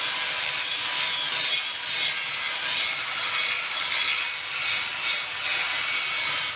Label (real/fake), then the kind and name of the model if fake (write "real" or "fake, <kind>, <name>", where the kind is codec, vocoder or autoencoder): real